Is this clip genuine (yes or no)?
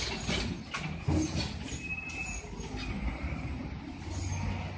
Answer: yes